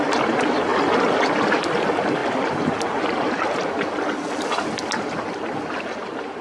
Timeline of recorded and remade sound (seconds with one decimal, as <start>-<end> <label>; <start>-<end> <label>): 0.0-6.4 recorded